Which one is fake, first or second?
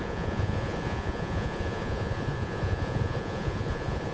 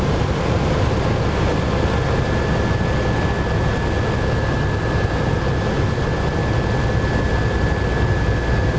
first